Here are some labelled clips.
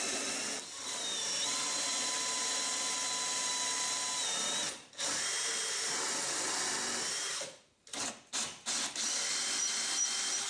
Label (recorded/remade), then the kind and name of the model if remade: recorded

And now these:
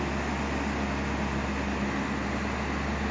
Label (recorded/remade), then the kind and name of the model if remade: recorded